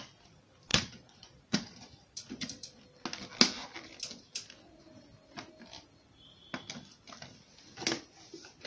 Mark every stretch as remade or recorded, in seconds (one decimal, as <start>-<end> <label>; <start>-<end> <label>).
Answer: 0.0-0.7 recorded; 0.7-2.8 remade; 2.8-8.7 recorded